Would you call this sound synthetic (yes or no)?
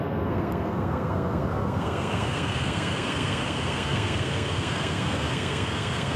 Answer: yes